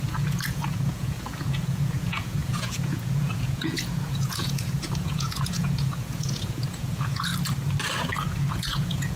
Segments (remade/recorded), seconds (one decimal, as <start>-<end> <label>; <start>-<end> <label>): 0.0-7.3 remade; 7.3-8.5 recorded; 8.5-9.2 remade